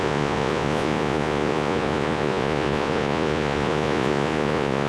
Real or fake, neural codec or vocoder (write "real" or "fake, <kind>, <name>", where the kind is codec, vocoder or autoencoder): fake, vocoder, Vocos